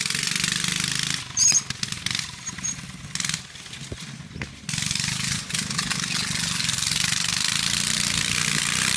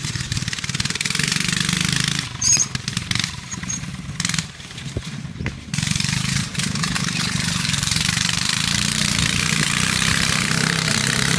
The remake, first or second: second